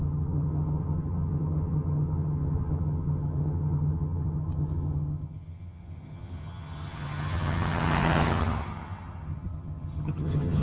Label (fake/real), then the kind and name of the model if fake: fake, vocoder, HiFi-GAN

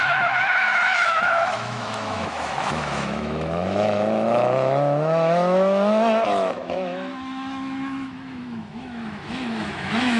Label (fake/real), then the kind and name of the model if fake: fake, autoencoder, DAC-VAE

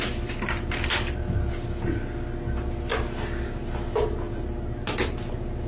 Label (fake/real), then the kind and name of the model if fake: real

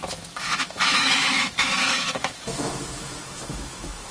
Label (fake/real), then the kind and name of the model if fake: fake, autoencoder, DAC-VAE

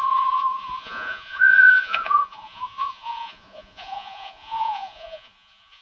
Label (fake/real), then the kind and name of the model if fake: fake, vocoder, Vocos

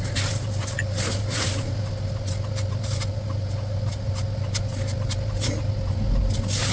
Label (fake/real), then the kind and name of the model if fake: real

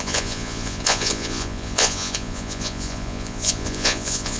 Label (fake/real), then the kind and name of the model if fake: fake, vocoder, Vocos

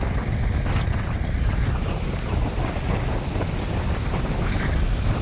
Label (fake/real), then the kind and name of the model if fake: real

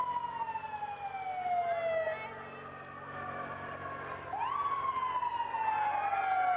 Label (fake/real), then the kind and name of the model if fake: real